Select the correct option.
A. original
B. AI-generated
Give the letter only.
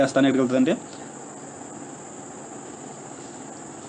A